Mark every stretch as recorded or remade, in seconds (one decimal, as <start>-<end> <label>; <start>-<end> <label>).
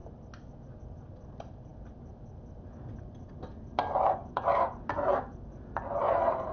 0.0-6.5 recorded